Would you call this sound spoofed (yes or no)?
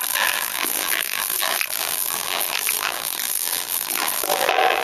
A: yes